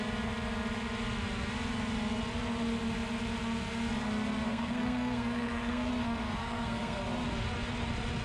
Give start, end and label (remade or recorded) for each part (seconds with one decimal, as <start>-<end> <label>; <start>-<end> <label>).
0.0-4.5 recorded; 4.5-5.9 remade; 5.9-6.4 recorded; 6.4-7.0 remade; 7.0-8.2 recorded